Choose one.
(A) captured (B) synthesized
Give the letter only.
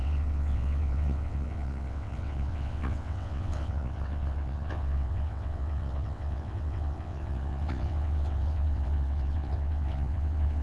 B